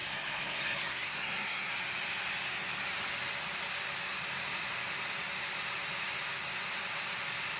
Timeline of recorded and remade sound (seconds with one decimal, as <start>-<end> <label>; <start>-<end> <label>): 0.0-1.7 remade; 1.7-7.6 recorded